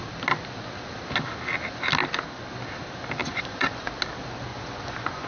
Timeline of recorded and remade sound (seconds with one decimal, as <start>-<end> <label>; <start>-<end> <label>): 0.0-3.2 recorded; 3.2-3.9 remade; 3.9-4.5 recorded; 4.5-5.3 remade